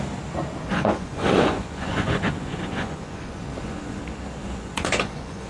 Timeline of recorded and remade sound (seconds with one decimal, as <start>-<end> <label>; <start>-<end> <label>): 0.0-0.7 recorded; 0.7-4.0 remade; 4.0-4.4 recorded; 4.4-5.5 remade